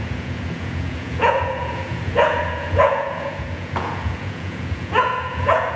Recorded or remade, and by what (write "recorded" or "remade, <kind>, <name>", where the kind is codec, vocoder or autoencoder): remade, vocoder, Vocos